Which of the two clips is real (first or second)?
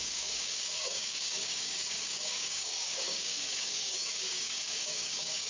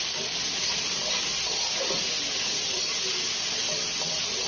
second